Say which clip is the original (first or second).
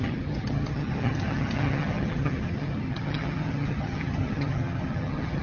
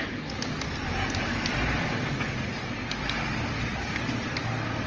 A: second